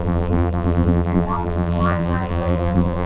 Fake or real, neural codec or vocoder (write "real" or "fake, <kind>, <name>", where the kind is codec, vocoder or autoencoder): fake, vocoder, BigVGAN v2